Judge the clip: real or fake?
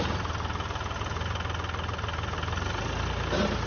real